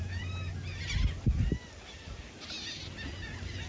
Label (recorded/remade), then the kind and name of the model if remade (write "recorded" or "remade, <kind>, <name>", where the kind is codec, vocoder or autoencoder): recorded